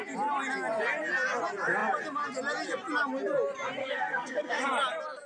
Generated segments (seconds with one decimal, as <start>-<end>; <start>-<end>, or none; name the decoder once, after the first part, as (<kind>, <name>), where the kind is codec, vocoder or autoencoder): 3.8-4.7 (codec, SNAC)